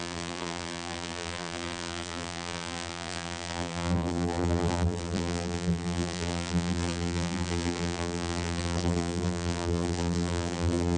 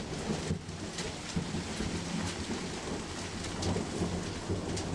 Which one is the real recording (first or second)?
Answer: second